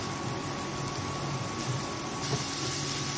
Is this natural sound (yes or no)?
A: yes